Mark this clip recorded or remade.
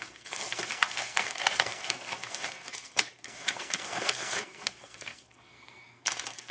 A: remade